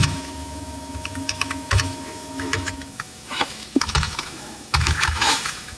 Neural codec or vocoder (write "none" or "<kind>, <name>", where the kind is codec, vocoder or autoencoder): autoencoder, DAC-VAE